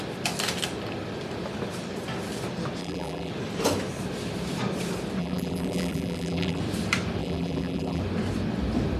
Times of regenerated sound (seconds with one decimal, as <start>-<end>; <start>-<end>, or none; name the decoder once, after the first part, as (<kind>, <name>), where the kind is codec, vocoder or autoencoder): 2.8-3.3 (vocoder, BigVGAN v2); 5.2-6.6; 7.2-8.0